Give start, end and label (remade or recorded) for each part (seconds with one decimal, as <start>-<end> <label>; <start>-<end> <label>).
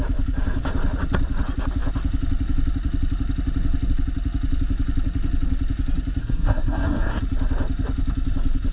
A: 0.0-6.2 recorded; 6.2-7.2 remade; 7.2-8.7 recorded